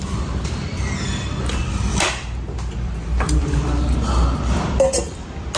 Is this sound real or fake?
fake